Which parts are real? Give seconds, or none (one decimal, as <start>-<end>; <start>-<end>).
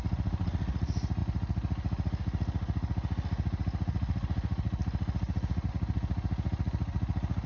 0.0-7.5